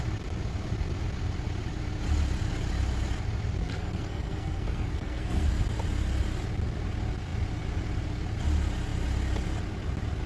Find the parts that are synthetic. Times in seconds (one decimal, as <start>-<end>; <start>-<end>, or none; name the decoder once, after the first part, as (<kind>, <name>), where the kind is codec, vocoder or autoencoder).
3.6-5.5 (codec, SNAC)